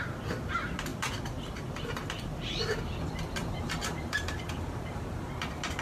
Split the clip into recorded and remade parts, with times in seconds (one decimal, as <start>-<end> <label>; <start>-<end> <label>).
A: 0.0-3.4 recorded; 3.4-5.3 remade; 5.3-5.8 recorded